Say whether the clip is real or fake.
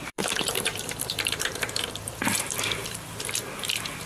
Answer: fake